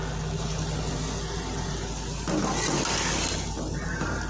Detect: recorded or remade recorded